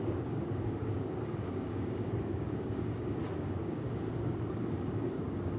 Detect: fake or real fake